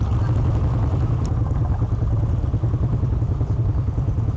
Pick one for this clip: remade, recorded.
recorded